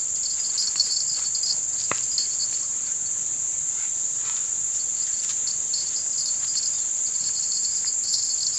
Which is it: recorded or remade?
remade